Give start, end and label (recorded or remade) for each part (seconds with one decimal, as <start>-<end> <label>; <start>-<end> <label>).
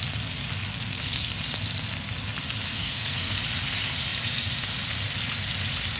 0.0-0.7 recorded; 0.7-1.3 remade; 1.3-2.7 recorded; 2.7-3.4 remade; 3.4-6.0 recorded